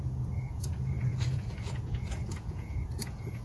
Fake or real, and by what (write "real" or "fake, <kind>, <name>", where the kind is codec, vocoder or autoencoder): fake, vocoder, Vocos